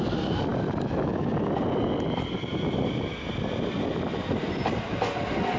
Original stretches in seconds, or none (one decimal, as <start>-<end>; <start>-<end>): 0.0-5.6